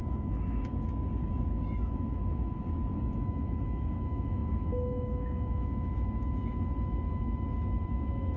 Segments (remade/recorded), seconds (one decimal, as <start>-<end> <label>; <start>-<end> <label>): 0.0-8.4 remade